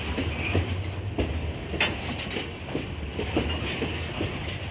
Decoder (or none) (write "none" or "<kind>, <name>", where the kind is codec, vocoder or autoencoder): none